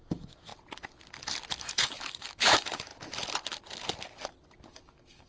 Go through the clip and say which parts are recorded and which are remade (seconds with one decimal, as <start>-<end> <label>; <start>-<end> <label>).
0.0-0.5 remade; 0.5-1.6 recorded; 1.6-2.9 remade; 2.9-4.7 recorded; 4.7-5.3 remade